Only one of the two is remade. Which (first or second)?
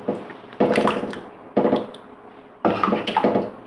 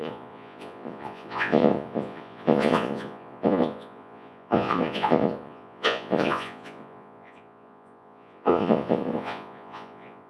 second